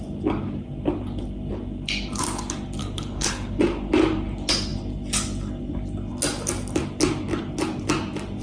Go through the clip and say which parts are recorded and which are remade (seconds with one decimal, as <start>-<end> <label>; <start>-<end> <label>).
0.0-2.8 recorded; 2.8-3.6 remade; 3.6-8.4 recorded